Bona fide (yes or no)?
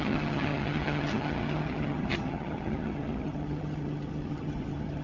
no